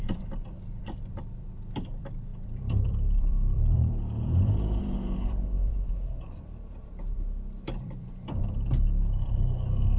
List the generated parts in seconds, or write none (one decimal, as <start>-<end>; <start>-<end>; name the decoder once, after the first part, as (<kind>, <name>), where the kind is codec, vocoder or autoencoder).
0.0-10.0 (vocoder, BigVGAN v2)